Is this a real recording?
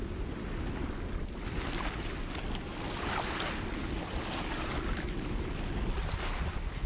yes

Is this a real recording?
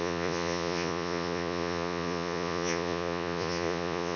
no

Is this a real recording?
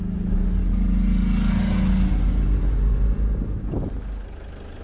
yes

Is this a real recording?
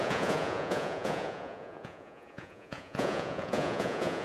no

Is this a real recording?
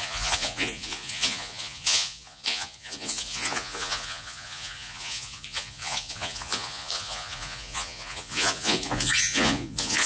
no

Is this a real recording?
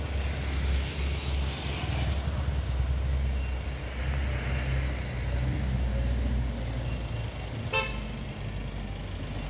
yes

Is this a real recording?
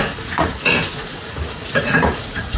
no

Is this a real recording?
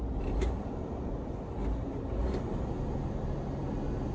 yes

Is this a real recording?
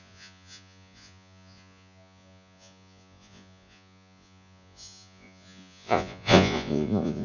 no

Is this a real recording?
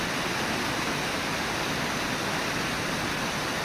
yes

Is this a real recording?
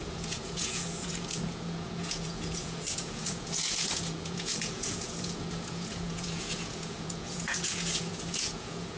no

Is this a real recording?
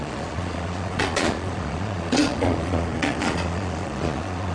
no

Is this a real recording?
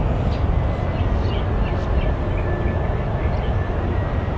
yes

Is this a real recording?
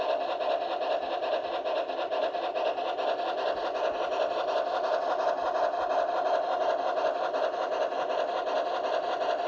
yes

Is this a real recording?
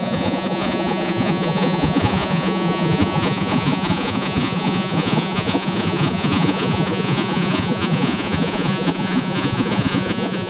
no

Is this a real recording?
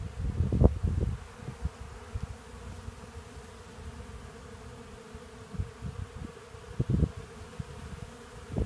yes